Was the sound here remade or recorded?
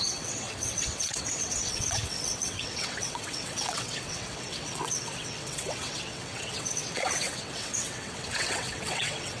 remade